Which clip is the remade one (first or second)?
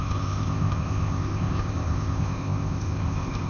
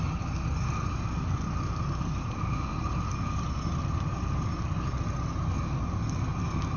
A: first